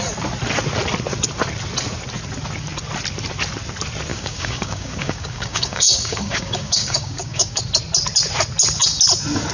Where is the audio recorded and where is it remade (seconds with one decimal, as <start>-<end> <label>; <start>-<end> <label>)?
0.0-4.1 recorded; 4.1-7.6 remade; 7.6-9.5 recorded